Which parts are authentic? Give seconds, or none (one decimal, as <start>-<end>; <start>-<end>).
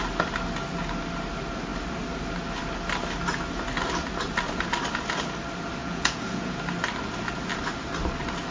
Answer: 0.0-5.8; 6.6-8.5